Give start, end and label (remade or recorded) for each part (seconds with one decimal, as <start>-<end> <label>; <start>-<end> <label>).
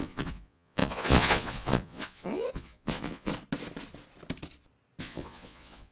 0.0-3.3 remade; 3.3-5.0 recorded; 5.0-5.9 remade